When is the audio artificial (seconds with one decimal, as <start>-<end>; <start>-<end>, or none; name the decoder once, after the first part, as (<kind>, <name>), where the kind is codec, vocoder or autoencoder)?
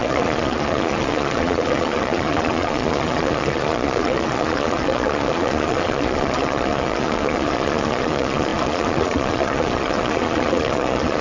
0.0-11.2 (vocoder, Vocos)